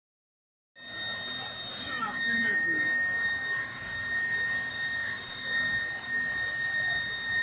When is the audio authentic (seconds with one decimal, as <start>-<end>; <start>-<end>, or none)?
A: 0.0-1.7; 5.8-7.4